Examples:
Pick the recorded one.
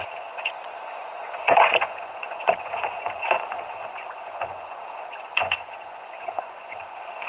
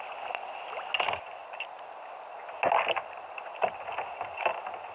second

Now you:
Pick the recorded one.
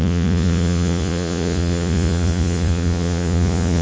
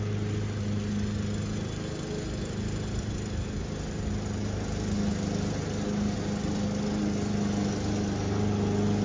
second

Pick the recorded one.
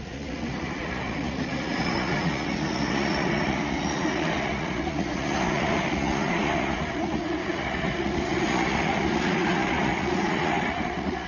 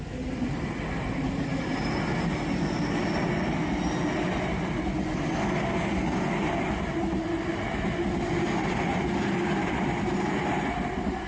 second